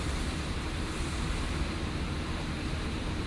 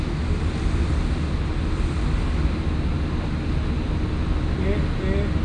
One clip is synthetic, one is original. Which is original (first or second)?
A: second